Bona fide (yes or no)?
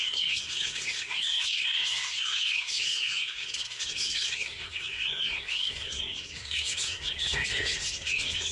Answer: no